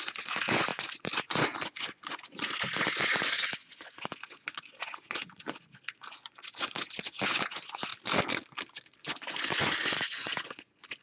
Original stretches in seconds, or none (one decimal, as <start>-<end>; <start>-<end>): 7.9-9.0